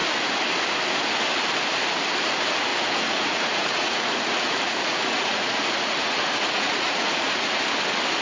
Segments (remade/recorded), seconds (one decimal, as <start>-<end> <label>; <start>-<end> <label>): 0.0-2.7 recorded; 2.7-7.6 remade; 7.6-8.2 recorded